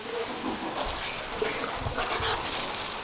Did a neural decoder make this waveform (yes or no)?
no